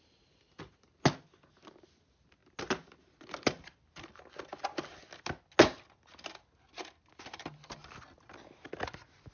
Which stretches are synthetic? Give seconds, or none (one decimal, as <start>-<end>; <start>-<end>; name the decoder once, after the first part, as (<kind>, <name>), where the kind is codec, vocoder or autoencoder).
none